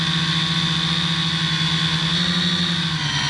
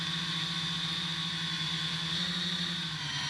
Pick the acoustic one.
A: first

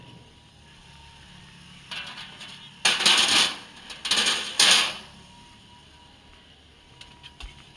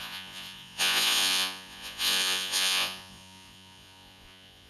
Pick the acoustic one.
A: first